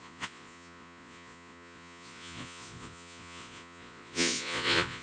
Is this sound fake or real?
fake